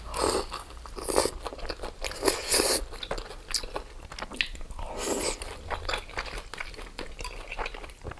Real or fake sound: real